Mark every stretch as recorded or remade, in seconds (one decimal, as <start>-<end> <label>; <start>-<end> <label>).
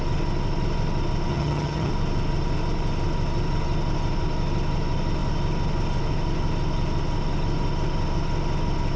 0.0-1.3 recorded; 1.3-1.9 remade; 1.9-9.0 recorded